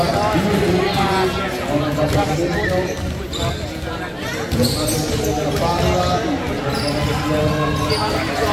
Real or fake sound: real